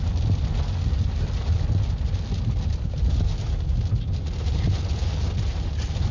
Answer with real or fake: real